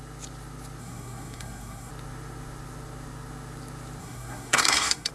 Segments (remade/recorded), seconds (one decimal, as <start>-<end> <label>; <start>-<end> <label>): 0.0-0.8 recorded; 0.8-1.9 remade; 1.9-4.0 recorded; 4.0-5.1 remade